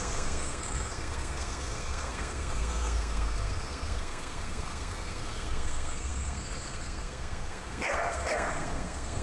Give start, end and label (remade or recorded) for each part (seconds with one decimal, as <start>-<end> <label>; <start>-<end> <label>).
0.0-9.2 remade

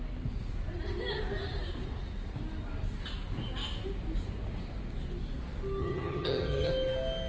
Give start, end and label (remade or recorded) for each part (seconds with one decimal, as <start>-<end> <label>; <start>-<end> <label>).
0.0-5.8 recorded; 5.8-6.7 remade; 6.7-7.3 recorded